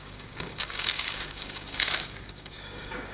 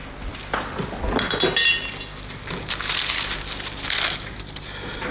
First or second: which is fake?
first